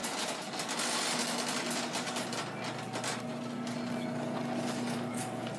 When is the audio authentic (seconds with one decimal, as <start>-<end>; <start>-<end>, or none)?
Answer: 0.0-5.6